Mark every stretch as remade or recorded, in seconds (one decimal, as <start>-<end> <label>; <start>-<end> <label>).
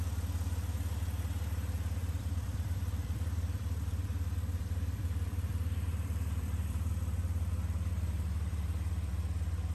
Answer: 0.0-2.0 recorded; 2.0-6.9 remade; 6.9-9.7 recorded